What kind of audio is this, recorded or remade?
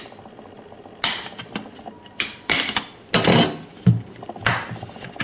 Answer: recorded